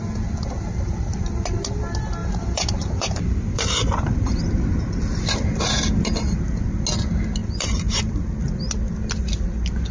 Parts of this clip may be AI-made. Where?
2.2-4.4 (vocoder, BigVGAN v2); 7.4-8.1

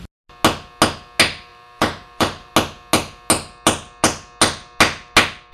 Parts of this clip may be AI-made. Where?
1.5-2.5 (vocoder, BigVGAN v2)

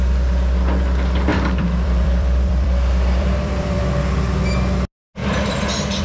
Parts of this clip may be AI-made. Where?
1.3-3.8 (vocoder, BigVGAN v2); 5.2-6.0

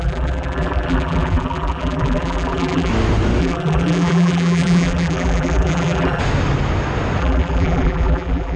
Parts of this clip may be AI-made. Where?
0.0-2.9 (vocoder, BigVGAN v2); 3.4-6.2; 7.2-8.6

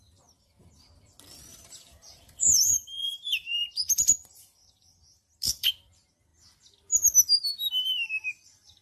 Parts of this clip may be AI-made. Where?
1.5-5.7 (vocoder, BigVGAN v2)